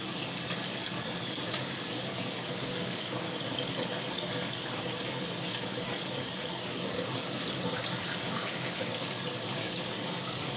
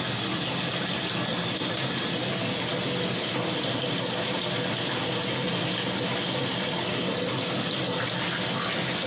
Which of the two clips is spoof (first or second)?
first